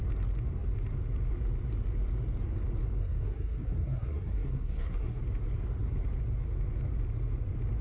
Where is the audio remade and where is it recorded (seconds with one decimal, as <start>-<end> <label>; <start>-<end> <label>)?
0.0-3.0 recorded; 3.0-5.2 remade; 5.2-7.8 recorded